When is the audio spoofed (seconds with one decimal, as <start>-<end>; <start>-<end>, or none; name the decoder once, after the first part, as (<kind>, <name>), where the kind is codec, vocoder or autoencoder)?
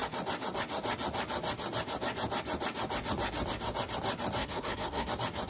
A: 4.4-5.1 (codec, SNAC)